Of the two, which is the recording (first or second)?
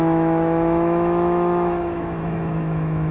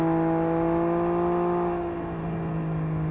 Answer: second